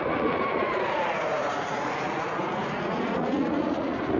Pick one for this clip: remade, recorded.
remade